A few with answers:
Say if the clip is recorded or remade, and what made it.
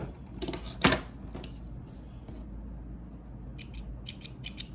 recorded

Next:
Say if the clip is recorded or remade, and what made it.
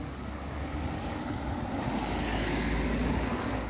remade, codec, DAC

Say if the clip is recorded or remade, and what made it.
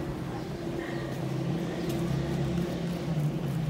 recorded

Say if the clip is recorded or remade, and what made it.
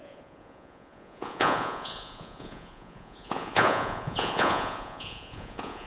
remade, vocoder, Vocos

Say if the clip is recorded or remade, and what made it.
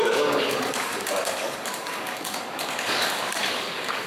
remade, codec, DAC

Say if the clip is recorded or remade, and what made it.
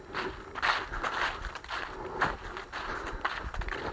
recorded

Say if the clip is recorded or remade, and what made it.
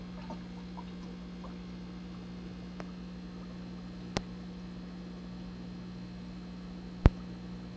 recorded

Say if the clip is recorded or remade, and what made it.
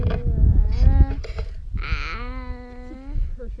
recorded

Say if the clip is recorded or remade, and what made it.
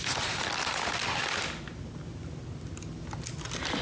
recorded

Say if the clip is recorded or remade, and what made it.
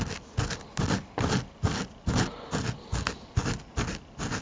recorded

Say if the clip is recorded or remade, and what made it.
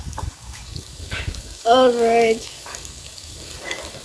remade, codec, DAC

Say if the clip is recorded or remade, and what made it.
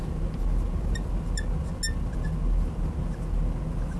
recorded